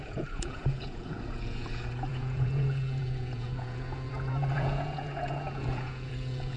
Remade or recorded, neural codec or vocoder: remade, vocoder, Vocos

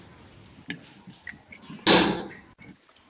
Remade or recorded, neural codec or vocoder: recorded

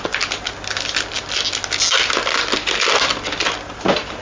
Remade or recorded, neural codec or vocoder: recorded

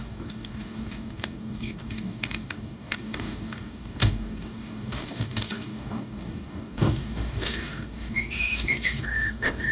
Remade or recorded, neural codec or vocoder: remade, codec, DAC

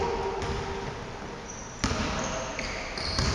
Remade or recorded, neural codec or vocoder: recorded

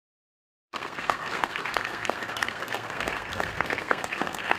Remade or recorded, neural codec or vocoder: remade, codec, SNAC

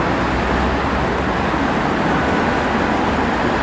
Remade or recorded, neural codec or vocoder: recorded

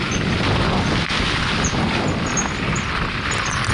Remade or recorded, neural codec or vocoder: recorded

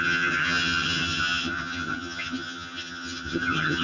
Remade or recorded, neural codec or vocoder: remade, vocoder, HiFi-GAN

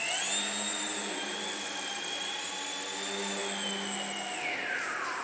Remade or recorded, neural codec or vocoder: recorded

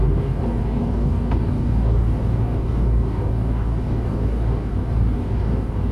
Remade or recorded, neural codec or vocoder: remade, codec, DAC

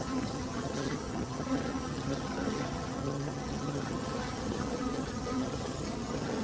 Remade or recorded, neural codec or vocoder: remade, vocoder, HiFi-GAN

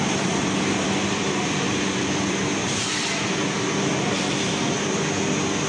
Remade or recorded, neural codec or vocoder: remade, vocoder, BigVGAN v2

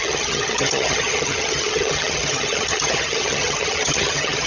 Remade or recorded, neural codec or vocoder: remade, vocoder, HiFi-GAN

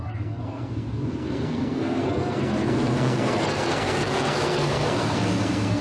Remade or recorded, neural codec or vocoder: remade, codec, SNAC